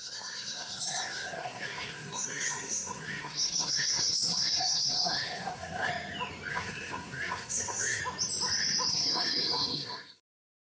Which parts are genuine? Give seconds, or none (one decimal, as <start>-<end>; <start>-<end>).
5.9-6.5; 8.0-8.9